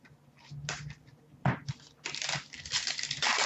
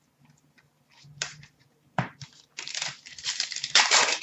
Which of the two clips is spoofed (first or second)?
second